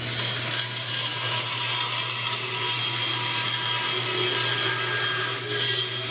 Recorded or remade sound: recorded